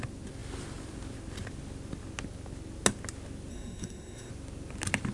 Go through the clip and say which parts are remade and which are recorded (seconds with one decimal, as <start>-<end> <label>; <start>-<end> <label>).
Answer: 0.0-3.5 recorded; 3.5-4.3 remade; 4.3-5.1 recorded